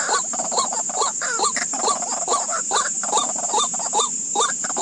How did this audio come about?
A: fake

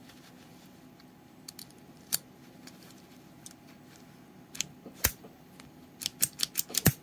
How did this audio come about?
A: real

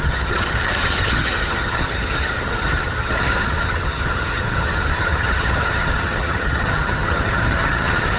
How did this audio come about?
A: fake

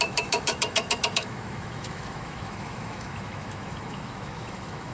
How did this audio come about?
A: fake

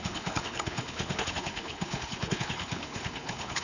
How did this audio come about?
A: fake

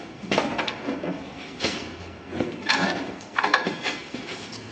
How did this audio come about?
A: fake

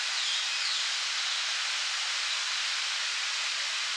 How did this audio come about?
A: real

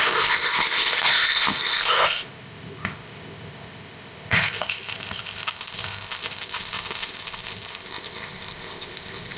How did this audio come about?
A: fake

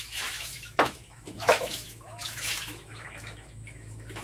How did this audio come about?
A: fake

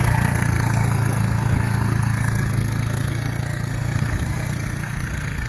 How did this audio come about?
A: fake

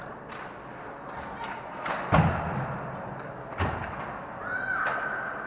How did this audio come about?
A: real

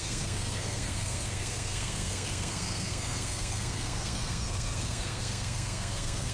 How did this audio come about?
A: fake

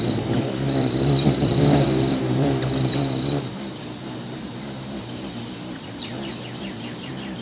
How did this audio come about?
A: fake